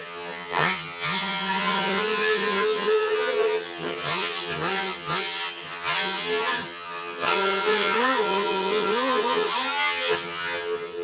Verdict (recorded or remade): remade